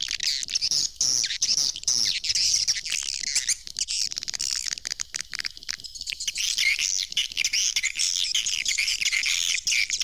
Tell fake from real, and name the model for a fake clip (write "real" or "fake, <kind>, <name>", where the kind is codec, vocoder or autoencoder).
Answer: real